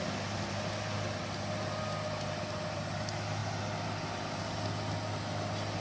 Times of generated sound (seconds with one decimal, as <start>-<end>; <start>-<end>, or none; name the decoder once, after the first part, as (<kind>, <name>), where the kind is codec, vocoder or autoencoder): none